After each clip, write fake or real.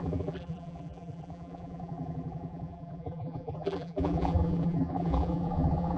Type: fake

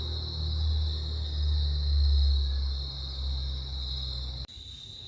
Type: real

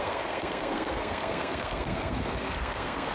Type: fake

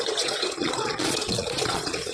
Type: fake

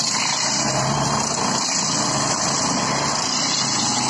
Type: fake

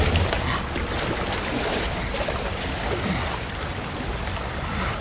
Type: real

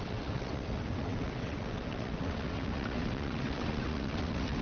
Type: fake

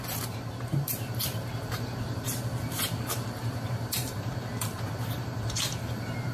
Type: fake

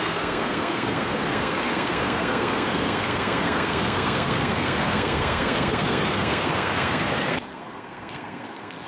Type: fake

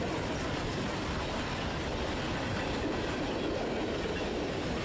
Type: real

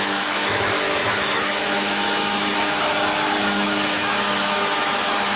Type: fake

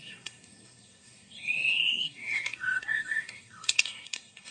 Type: fake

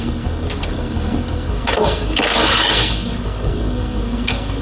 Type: fake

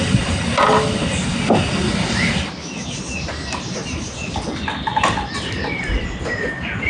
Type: real